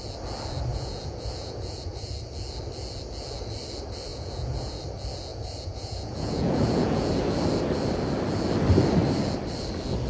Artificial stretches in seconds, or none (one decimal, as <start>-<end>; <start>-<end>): 0.7-2.1; 4.1-4.8; 5.3-7.1